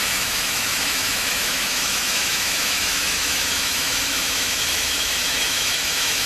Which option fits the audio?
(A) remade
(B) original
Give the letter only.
A